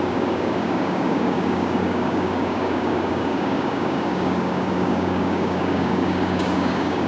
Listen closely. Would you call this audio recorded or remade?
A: remade